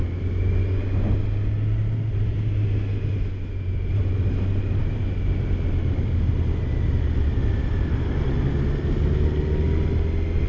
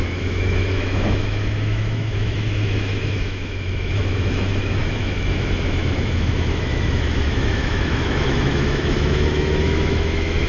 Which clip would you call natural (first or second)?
first